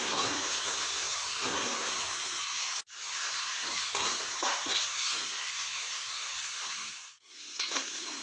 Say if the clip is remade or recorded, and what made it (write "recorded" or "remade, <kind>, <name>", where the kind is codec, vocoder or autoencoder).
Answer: remade, codec, SNAC